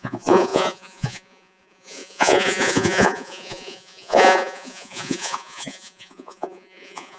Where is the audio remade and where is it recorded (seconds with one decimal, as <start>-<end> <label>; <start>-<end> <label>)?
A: 0.0-7.2 remade